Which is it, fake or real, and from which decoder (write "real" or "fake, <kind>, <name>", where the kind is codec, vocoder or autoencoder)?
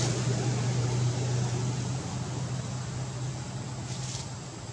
real